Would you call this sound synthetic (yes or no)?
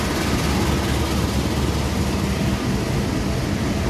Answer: no